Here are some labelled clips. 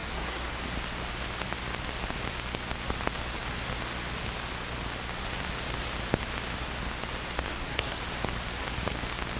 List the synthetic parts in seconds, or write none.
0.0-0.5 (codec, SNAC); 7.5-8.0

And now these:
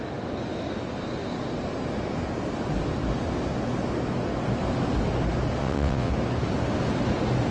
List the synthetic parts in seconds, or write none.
5.6-6.1 (vocoder, WaveNeXt)

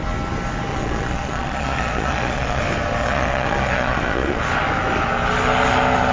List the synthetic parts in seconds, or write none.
0.7-2.6 (vocoder, Vocos); 3.0-4.4